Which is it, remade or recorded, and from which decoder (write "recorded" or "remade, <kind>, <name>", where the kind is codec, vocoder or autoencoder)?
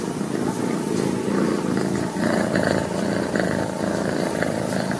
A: recorded